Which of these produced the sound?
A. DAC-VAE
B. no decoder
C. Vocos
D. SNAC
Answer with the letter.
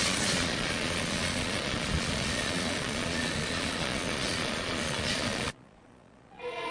C